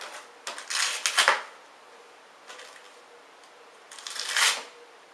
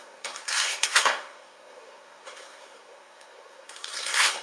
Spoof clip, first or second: second